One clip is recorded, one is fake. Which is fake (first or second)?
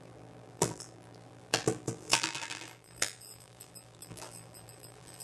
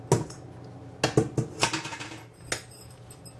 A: first